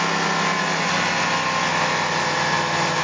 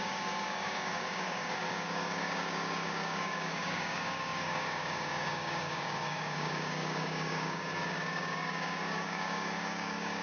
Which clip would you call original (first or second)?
first